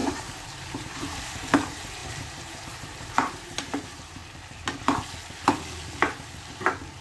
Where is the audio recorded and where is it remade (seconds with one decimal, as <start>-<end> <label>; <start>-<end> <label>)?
0.0-4.2 remade; 4.2-7.0 recorded